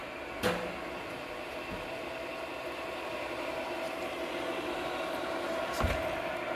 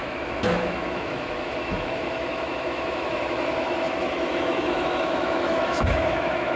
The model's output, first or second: second